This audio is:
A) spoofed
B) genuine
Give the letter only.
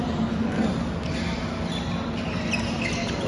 B